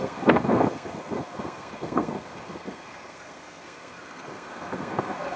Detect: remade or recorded remade